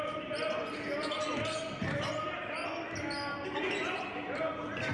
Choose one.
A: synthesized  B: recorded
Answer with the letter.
B